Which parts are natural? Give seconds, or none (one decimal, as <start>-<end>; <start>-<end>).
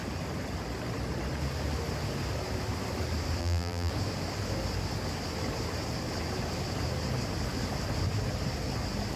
0.0-3.4; 3.9-9.2